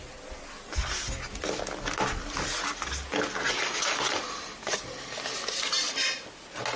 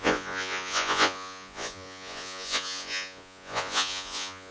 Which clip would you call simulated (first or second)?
second